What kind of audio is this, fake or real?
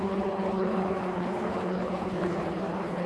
fake